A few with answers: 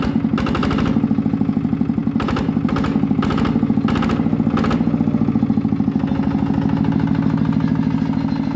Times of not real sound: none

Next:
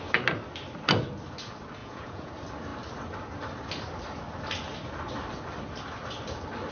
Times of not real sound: 1.8-2.3 (vocoder, Vocos)

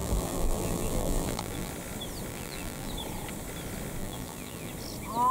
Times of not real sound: 0.0-1.7 (vocoder, BigVGAN v2); 2.3-2.9; 4.0-4.7

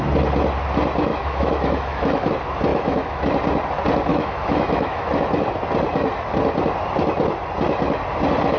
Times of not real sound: 1.1-2.3 (autoencoder, DAC-VAE); 2.7-3.2; 4.1-5.2

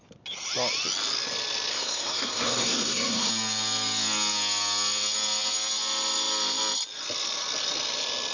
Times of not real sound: 1.7-3.3 (codec, SNAC)

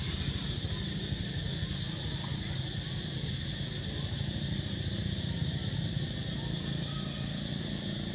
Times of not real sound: none